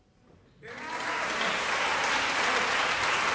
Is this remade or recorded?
recorded